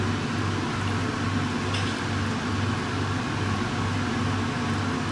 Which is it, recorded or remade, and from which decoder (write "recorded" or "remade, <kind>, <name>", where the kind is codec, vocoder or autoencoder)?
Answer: recorded